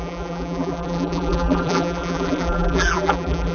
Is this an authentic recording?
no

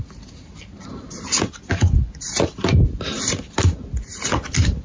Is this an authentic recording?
yes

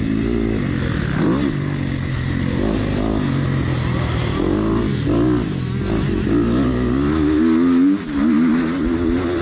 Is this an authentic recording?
yes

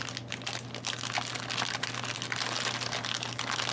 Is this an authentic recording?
yes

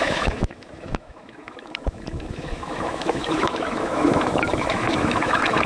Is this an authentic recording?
no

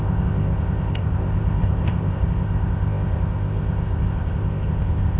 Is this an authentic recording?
no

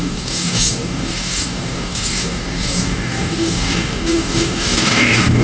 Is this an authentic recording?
no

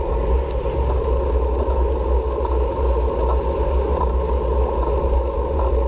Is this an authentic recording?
yes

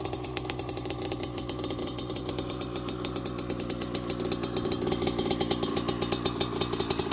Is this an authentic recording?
yes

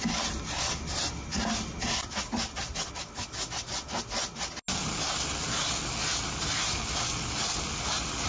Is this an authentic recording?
yes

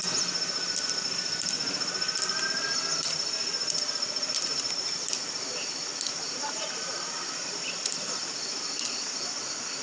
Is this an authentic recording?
yes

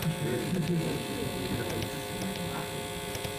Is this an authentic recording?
no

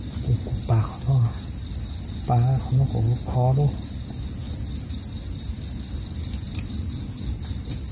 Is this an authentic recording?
yes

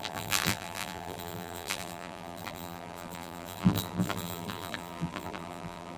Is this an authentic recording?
no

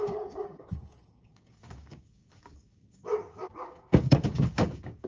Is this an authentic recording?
no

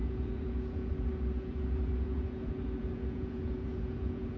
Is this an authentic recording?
no